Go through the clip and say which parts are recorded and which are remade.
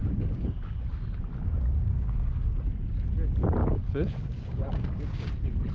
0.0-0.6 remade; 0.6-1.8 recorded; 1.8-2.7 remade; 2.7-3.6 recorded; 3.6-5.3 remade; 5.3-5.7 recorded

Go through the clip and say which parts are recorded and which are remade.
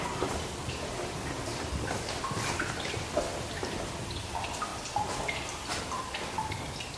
0.0-3.8 remade; 3.8-4.7 recorded; 4.7-5.8 remade; 5.8-7.0 recorded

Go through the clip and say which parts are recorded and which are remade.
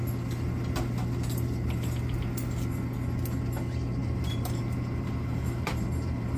0.0-4.0 recorded; 4.0-6.4 remade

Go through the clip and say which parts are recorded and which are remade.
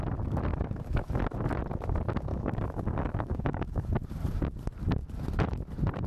0.0-0.5 recorded; 0.5-1.2 remade; 1.2-2.3 recorded; 2.3-3.9 remade; 3.9-6.1 recorded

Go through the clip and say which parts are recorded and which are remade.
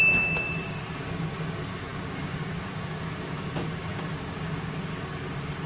0.0-4.9 remade; 4.9-5.7 recorded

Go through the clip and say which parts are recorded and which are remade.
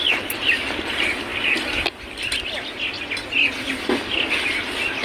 0.0-5.0 recorded